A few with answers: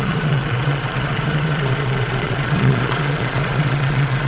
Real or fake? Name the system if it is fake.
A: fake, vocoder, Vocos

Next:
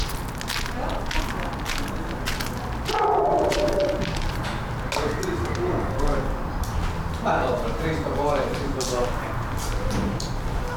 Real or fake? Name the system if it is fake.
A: real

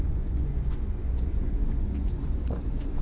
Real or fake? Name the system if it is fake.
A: fake, vocoder, Vocos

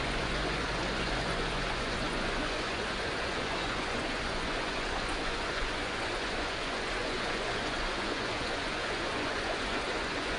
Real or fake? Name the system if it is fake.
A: fake, vocoder, Vocos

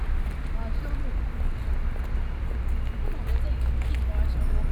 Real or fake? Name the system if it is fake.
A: real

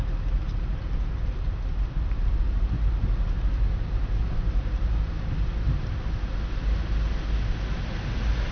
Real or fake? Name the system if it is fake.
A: real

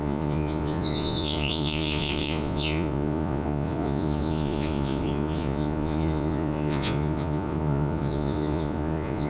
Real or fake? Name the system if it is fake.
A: fake, vocoder, Vocos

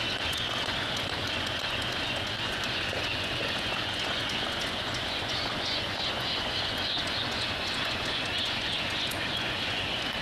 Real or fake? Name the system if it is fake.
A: fake, vocoder, Vocos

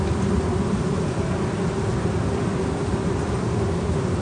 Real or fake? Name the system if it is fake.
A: real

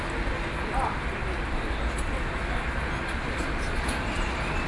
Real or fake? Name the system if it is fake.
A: real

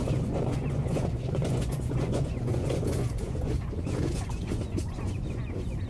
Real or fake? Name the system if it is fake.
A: fake, vocoder, Vocos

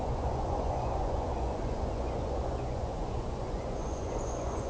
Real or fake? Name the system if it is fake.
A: fake, vocoder, Vocos